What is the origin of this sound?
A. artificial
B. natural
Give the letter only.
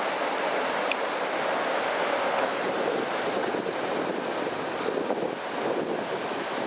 B